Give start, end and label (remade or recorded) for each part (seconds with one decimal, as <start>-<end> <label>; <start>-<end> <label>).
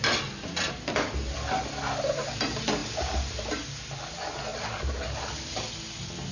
0.0-2.8 recorded; 2.8-3.5 remade; 3.5-4.5 recorded; 4.5-5.3 remade; 5.3-6.3 recorded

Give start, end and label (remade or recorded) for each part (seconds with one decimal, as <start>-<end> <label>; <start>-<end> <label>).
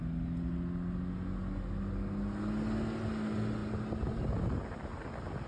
0.0-3.6 recorded; 3.6-5.1 remade; 5.1-5.5 recorded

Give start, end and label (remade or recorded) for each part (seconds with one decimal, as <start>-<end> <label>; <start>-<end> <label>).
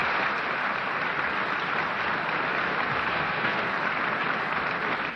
0.0-3.1 recorded; 3.1-3.7 remade; 3.7-5.2 recorded